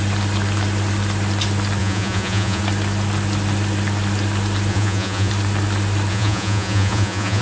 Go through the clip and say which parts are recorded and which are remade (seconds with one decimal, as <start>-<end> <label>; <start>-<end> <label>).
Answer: 0.0-1.8 recorded; 1.8-2.6 remade; 2.6-4.7 recorded; 4.7-5.3 remade; 5.3-6.1 recorded; 6.1-7.4 remade